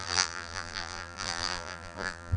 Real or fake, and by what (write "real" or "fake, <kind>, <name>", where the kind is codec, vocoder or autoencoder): fake, vocoder, BigVGAN v2